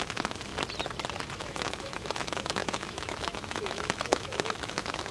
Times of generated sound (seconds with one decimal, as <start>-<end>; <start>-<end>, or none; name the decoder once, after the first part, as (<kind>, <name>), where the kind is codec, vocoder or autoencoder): 0.0-0.5 (autoencoder, DAC-VAE); 1.4-5.1